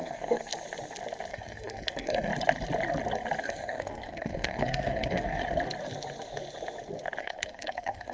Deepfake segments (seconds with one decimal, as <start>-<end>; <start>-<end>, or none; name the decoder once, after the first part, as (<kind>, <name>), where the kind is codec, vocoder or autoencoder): 0.0-0.5 (codec, SNAC); 1.3-2.3; 3.4-5.4; 7.2-8.1